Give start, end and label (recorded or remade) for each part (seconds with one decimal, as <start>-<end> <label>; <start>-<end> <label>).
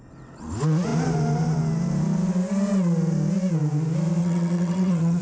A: 0.0-4.2 recorded; 4.2-5.2 remade